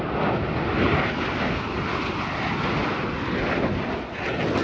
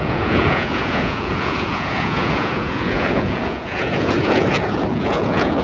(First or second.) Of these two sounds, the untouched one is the first